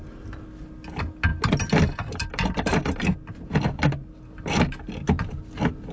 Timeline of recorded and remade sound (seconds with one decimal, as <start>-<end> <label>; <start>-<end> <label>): 0.0-5.9 recorded